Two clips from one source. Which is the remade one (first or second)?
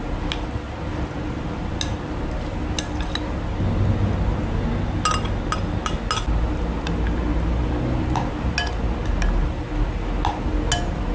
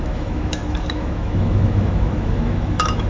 second